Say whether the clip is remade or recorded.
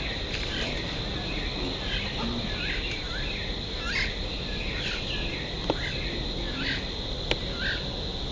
recorded